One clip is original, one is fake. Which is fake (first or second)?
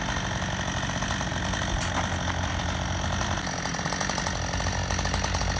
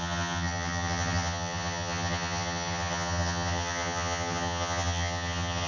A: second